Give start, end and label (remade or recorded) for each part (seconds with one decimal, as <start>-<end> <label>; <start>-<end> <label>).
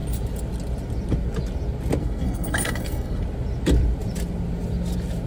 0.0-2.0 recorded; 2.0-3.2 remade; 3.2-5.3 recorded